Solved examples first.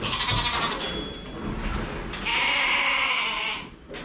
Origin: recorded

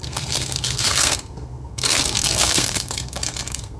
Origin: remade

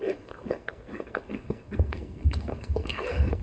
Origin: remade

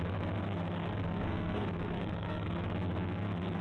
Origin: remade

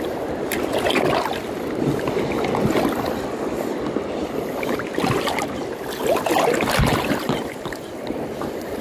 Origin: recorded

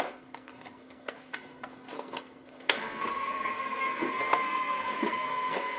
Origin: remade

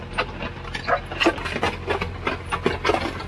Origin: recorded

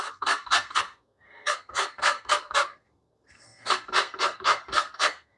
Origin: remade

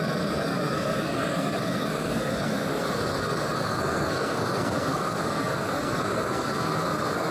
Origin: remade